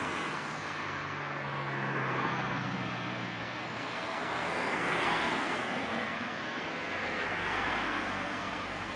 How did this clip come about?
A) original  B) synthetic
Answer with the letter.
B